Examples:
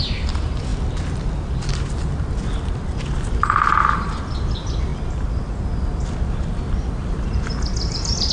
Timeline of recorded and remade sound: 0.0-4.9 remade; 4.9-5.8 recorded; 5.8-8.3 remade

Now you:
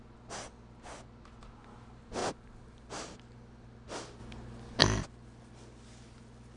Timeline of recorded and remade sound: 0.0-6.6 recorded

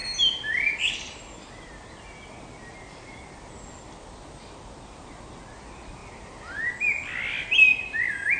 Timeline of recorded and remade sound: 0.0-8.4 recorded